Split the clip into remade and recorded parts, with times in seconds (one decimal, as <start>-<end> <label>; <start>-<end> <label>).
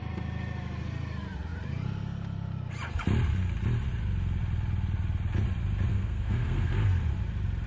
0.0-5.9 recorded; 5.9-7.0 remade; 7.0-7.7 recorded